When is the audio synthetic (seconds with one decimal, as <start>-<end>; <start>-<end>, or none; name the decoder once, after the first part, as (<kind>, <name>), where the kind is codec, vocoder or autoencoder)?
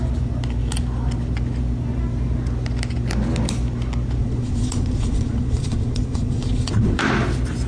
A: 4.2-7.0 (vocoder, Vocos)